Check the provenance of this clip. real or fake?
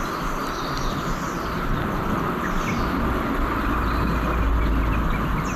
real